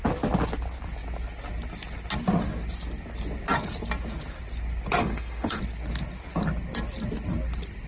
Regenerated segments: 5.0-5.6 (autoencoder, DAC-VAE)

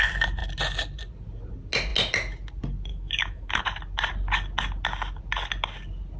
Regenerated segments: 2.9-3.6 (autoencoder, DAC-VAE)

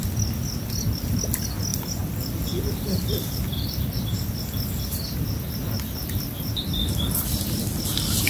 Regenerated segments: none